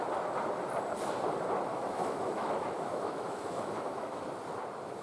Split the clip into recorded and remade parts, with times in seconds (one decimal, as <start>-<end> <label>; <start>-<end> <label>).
0.0-1.7 recorded; 1.7-4.2 remade; 4.2-5.0 recorded